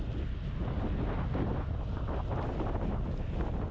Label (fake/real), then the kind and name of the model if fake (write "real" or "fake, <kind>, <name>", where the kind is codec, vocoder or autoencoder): real